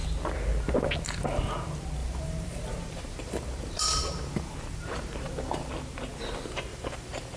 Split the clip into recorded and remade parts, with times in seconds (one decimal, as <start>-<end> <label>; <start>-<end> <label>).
0.0-2.0 recorded; 2.0-5.7 remade; 5.7-6.7 recorded; 6.7-7.4 remade